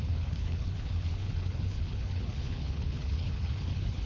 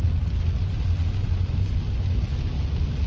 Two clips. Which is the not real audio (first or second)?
first